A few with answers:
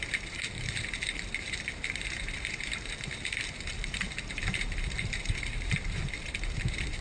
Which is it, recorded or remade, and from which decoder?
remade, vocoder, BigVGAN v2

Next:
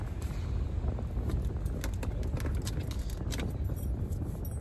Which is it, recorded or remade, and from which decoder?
recorded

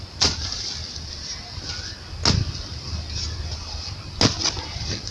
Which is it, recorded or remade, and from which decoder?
recorded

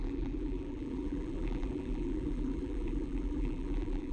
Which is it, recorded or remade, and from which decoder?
remade, vocoder, BigVGAN v2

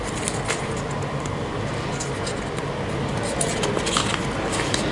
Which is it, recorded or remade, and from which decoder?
recorded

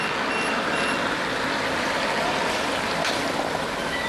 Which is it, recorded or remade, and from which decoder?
remade, vocoder, BigVGAN v2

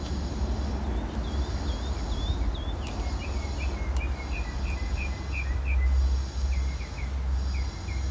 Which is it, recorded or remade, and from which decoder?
recorded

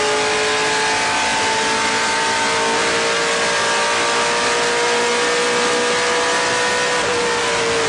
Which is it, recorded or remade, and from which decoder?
recorded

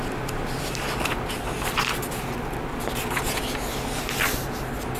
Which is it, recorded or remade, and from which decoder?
recorded